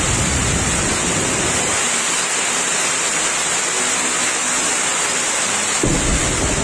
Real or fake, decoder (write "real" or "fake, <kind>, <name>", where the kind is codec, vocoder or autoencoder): real